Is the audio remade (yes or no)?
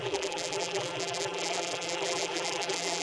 yes